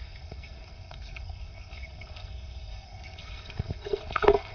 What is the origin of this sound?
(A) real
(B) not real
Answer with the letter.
B